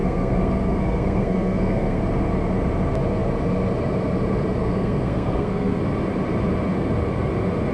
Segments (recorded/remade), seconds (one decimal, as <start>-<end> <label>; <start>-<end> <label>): 0.0-2.0 remade; 2.0-4.6 recorded; 4.6-5.8 remade; 5.8-7.7 recorded